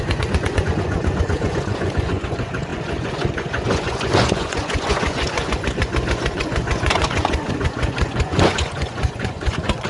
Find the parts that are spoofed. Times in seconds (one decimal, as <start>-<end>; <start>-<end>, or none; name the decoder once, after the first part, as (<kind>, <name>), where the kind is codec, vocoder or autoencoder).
0.0-9.9 (vocoder, Vocos)